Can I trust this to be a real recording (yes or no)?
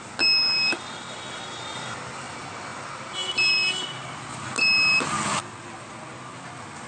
yes